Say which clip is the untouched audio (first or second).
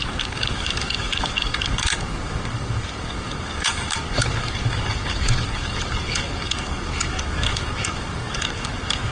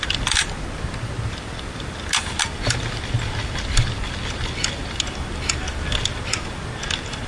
second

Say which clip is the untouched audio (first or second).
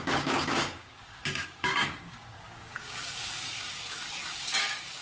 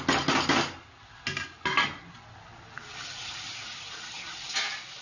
second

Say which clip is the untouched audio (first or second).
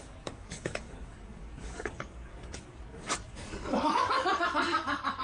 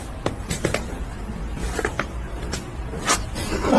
second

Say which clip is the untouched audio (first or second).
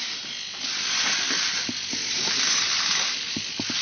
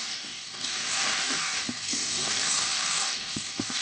first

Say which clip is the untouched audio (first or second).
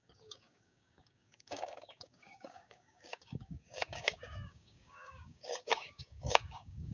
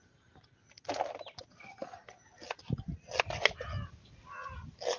second